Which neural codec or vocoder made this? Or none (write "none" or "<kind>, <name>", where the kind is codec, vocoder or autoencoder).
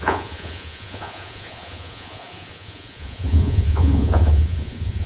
vocoder, Vocos